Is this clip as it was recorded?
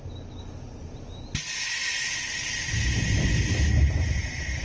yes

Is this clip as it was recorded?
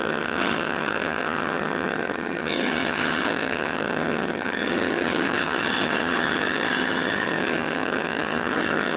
no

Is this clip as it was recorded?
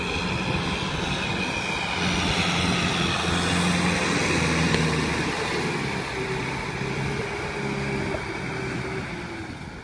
yes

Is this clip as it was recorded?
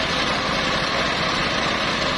yes